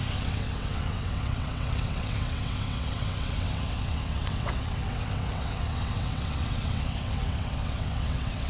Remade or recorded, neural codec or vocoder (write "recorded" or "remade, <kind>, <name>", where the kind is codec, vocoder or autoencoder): remade, vocoder, WaveNeXt